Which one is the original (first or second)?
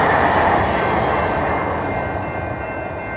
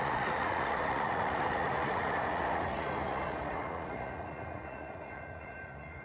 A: first